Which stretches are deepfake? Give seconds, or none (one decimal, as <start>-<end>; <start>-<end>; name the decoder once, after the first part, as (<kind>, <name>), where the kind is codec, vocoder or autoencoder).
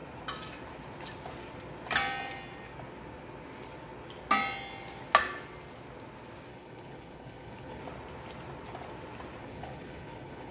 6.5-7.8 (codec, HILCodec); 9.4-10.5